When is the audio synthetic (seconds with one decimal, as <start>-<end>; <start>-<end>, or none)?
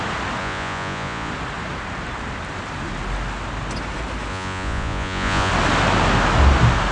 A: 0.4-1.3; 4.3-5.5